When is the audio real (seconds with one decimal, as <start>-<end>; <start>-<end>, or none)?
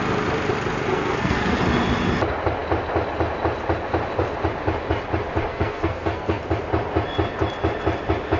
0.0-0.9; 1.6-5.5; 6.4-8.4